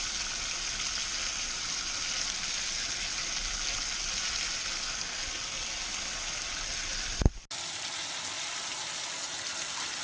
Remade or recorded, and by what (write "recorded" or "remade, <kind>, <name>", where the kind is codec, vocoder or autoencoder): recorded